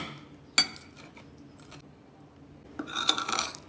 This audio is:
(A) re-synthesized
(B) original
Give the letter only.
B